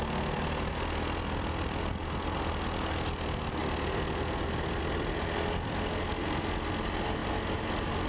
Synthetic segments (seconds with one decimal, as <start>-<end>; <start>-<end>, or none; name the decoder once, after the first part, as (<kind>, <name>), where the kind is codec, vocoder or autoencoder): none